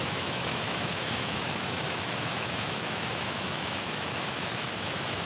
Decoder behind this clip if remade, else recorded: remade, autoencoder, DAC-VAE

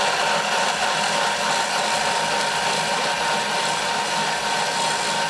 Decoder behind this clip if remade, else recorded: recorded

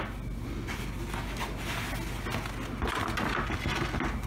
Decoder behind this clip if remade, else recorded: recorded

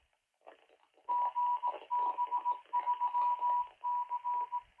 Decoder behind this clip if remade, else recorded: recorded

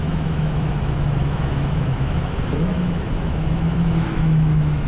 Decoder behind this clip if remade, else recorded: remade, autoencoder, DAC-VAE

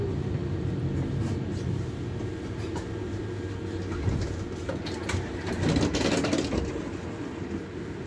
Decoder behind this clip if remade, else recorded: recorded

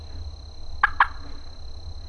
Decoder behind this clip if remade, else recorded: recorded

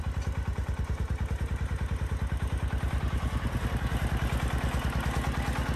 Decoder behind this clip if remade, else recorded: recorded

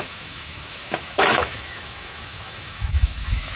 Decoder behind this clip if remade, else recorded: remade, autoencoder, DAC-VAE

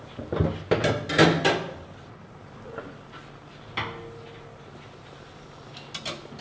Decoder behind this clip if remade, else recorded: recorded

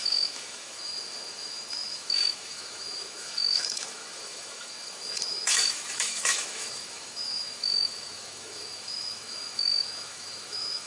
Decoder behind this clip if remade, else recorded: remade, autoencoder, DAC-VAE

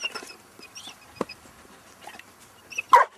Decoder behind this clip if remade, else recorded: recorded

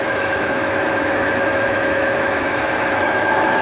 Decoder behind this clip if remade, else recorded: remade, autoencoder, DAC-VAE